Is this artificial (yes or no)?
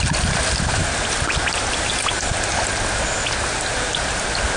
no